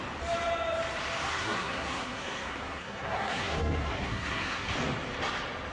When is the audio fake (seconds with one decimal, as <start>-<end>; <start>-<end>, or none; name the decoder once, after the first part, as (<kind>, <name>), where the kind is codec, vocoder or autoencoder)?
1.3-4.7 (codec, SNAC)